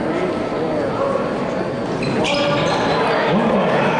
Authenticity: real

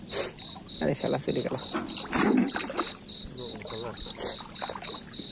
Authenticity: real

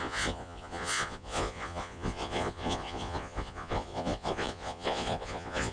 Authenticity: fake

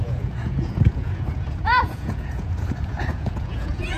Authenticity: fake